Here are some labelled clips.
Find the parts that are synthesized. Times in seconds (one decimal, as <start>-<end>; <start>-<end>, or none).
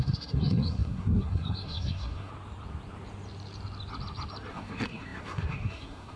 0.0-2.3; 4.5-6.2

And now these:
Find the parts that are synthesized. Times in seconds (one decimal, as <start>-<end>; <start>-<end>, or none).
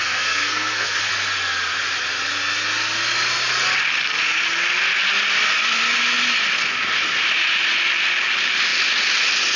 0.0-1.1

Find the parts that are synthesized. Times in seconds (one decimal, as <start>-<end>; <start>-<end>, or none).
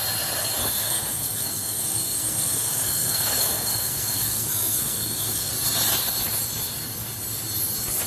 0.6-5.5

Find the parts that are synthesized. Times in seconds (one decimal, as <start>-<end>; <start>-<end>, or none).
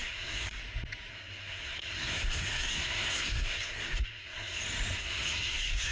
0.0-0.6; 1.1-4.6; 5.0-5.9